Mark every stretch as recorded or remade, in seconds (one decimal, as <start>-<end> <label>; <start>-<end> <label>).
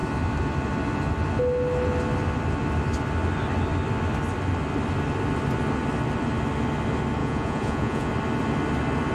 0.0-7.2 recorded; 7.2-8.1 remade; 8.1-9.1 recorded